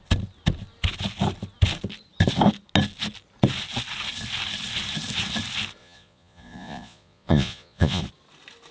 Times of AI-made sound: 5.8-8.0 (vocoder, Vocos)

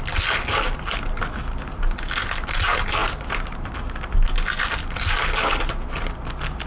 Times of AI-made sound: none

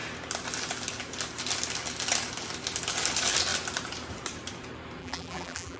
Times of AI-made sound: 5.0-5.8 (vocoder, BigVGAN v2)